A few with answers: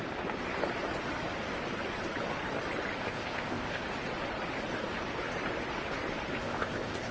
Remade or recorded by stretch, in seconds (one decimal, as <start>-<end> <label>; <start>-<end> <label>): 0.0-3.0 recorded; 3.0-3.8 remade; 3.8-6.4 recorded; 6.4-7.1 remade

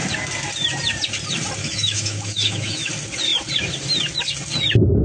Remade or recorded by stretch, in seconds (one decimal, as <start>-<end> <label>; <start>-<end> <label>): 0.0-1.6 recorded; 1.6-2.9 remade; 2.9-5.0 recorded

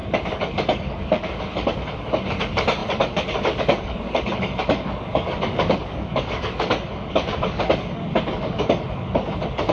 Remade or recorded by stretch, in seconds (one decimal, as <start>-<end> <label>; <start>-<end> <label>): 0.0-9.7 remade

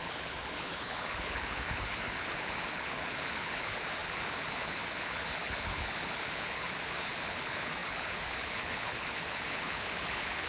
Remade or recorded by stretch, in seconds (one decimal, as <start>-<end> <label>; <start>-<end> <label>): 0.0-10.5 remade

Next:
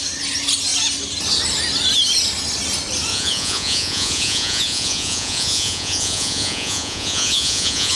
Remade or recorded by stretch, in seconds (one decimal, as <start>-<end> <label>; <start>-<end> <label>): 0.0-3.1 recorded; 3.1-8.0 remade

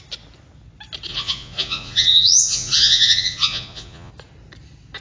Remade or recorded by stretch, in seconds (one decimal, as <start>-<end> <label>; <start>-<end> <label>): 0.0-1.1 recorded; 1.1-4.1 remade; 4.1-5.0 recorded